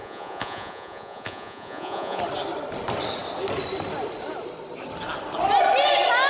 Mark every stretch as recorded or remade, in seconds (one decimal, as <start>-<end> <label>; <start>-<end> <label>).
0.0-2.2 remade; 2.2-6.3 recorded